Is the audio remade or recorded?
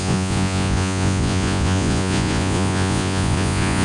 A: remade